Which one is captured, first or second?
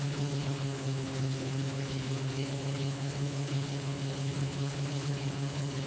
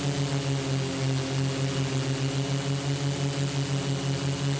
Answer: second